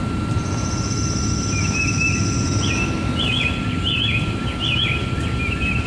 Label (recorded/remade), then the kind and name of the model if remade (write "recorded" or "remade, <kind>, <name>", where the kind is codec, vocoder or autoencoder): recorded